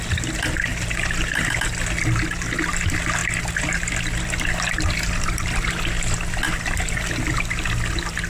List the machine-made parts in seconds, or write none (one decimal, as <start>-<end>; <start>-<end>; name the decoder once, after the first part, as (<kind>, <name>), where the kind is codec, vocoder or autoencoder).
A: none